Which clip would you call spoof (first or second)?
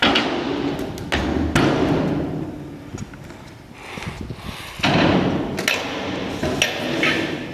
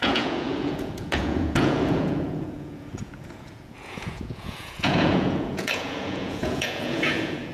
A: second